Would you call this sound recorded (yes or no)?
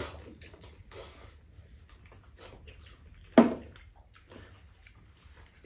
yes